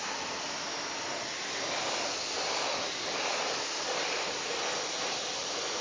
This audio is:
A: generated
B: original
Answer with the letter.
B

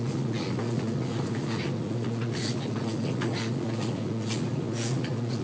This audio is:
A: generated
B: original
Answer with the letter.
A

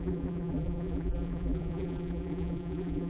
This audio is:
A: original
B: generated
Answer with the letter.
B